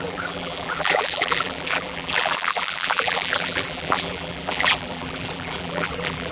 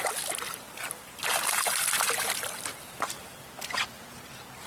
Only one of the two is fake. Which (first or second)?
first